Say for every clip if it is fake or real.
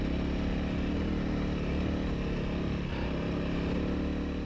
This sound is real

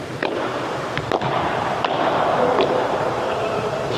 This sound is fake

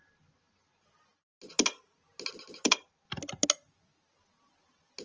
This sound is real